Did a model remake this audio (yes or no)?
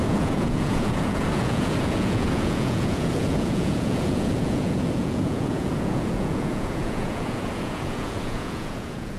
yes